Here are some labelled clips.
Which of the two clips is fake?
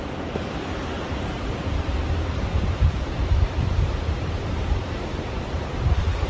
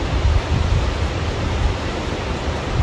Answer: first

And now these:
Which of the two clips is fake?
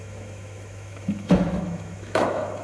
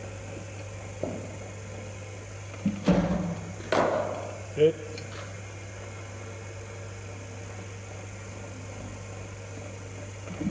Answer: first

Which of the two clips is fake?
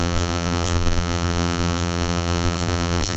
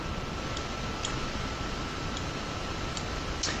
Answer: first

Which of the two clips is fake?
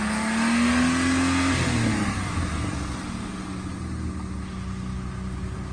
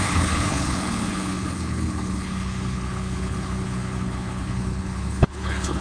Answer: second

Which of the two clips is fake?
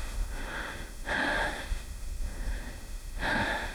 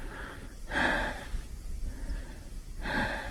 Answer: first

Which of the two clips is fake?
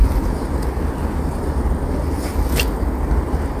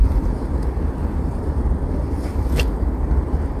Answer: second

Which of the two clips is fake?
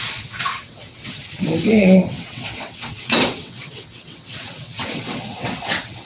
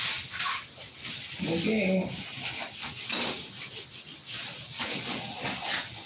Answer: first